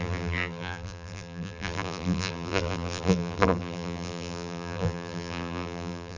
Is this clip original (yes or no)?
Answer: no